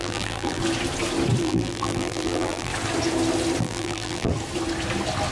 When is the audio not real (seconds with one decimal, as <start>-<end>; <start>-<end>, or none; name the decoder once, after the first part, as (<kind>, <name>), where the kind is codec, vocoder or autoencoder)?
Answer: 0.0-0.6 (vocoder, BigVGAN v2); 1.4-2.7; 3.6-4.3